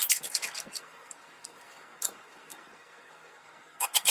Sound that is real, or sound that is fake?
fake